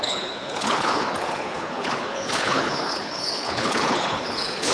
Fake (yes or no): yes